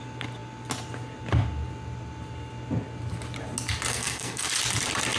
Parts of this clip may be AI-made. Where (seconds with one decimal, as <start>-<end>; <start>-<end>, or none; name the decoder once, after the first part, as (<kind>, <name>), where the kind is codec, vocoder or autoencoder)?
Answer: 3.9-4.5 (codec, SNAC)

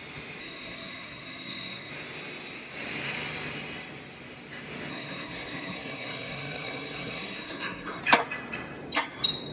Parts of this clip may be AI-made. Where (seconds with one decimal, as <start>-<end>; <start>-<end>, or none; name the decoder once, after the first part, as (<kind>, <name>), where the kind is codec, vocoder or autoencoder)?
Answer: 0.4-1.9 (codec, SNAC); 4.9-8.0